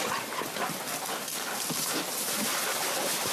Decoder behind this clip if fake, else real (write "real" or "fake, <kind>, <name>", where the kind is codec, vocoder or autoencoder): real